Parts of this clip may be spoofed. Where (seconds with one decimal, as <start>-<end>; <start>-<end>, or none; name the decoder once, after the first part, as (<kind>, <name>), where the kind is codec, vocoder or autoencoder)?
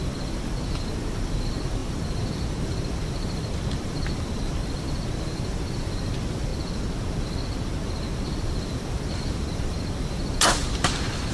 0.0-6.5 (vocoder, BigVGAN v2); 8.4-10.6